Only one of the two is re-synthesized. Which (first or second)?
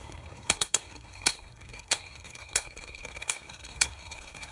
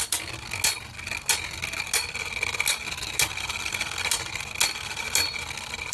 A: first